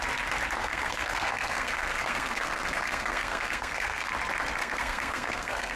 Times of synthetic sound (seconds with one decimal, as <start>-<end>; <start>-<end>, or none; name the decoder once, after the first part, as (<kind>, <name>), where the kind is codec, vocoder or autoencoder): 0.6-4.1 (codec, SNAC); 4.6-5.8

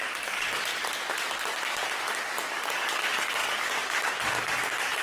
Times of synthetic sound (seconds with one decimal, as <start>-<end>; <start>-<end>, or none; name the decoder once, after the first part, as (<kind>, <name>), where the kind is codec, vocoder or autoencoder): 0.0-0.7 (codec, DAC); 1.3-5.0

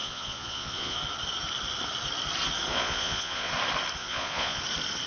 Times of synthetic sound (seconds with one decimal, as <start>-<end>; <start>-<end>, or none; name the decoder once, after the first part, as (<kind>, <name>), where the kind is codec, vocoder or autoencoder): 0.0-1.0 (vocoder, Vocos); 2.7-3.5; 4.0-4.6